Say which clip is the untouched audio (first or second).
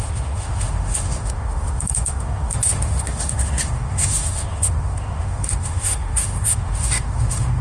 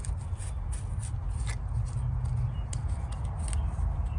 second